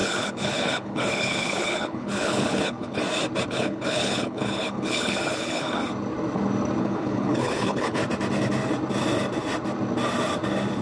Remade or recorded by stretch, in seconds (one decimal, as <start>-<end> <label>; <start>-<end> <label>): 0.0-3.0 remade; 3.0-3.5 recorded; 3.5-5.8 remade; 5.8-6.8 recorded; 6.8-8.0 remade; 8.0-10.8 recorded